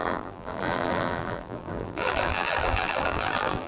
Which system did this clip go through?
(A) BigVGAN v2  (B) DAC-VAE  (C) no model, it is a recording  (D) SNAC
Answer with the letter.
A